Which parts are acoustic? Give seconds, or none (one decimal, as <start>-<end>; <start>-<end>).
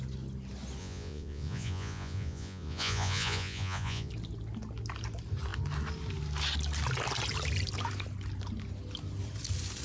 0.0-0.8; 4.1-9.8